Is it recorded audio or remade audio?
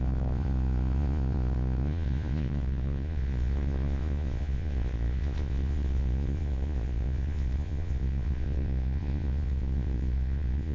remade